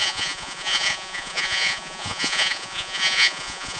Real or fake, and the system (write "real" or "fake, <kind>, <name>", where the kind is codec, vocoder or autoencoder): fake, vocoder, Vocos